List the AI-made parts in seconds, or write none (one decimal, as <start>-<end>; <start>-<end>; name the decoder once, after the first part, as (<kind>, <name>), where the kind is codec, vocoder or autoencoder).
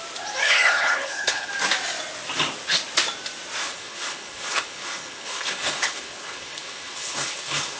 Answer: 0.4-1.5 (codec, HILCodec); 3.6-7.8